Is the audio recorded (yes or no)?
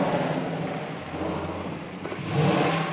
yes